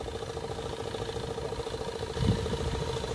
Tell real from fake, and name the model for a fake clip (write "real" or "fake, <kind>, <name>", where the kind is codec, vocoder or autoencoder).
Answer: real